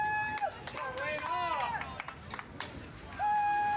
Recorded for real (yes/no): yes